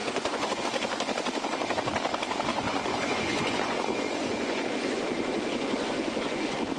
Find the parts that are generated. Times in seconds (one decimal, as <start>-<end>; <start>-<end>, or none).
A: 0.0-0.6; 2.5-6.8